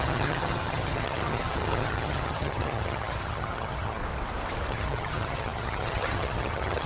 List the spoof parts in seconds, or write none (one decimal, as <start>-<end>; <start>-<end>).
0.0-4.0; 4.7-6.9